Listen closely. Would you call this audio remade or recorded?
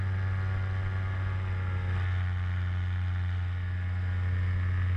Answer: recorded